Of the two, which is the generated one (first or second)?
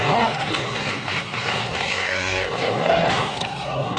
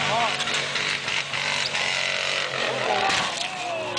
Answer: first